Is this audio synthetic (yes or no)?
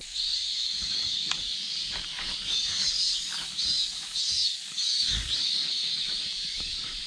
yes